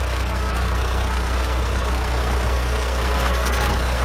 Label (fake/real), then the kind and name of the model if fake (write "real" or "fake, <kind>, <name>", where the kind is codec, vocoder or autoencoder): fake, codec, SNAC